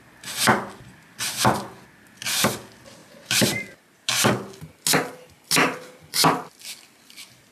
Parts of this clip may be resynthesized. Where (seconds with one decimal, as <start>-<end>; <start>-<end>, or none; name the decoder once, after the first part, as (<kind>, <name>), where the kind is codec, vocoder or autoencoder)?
3.0-3.8 (vocoder, BigVGAN v2)